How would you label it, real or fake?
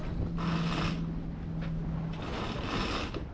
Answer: real